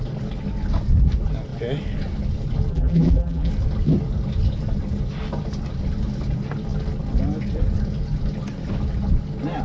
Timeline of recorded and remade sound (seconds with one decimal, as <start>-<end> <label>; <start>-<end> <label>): 0.0-2.7 recorded; 2.7-3.5 remade; 3.5-9.6 recorded